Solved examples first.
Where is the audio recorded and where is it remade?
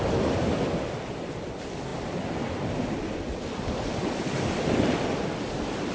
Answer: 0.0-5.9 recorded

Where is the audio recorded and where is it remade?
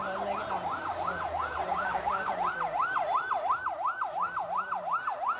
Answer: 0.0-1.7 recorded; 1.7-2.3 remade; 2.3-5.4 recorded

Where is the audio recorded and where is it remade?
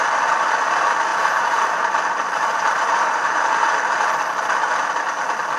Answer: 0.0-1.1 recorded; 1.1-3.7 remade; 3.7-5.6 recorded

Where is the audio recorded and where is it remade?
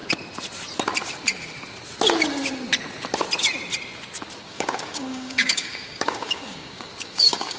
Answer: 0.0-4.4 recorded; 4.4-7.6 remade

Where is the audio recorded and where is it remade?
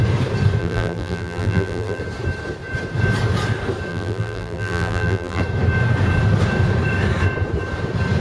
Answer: 0.0-0.6 recorded; 0.6-2.0 remade; 2.0-3.9 recorded; 3.9-5.4 remade; 5.4-8.2 recorded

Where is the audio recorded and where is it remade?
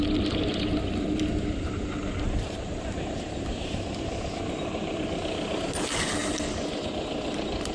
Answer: 0.0-7.7 recorded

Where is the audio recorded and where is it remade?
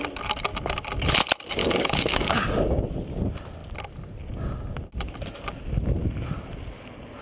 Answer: 0.0-1.6 recorded; 1.6-2.8 remade; 2.8-7.2 recorded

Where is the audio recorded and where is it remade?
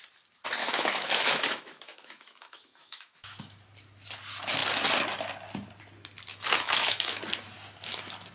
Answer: 0.0-0.6 recorded; 0.6-3.4 remade; 3.4-6.3 recorded; 6.3-7.2 remade; 7.2-8.3 recorded